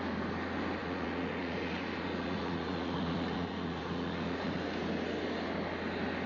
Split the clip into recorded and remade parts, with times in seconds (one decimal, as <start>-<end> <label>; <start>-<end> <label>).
0.0-0.8 recorded; 0.8-4.6 remade; 4.6-6.3 recorded